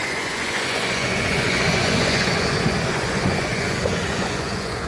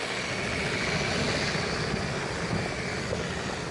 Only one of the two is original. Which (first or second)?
second